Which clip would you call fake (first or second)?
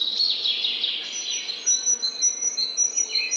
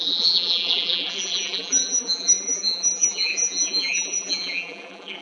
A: second